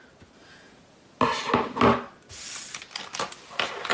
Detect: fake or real real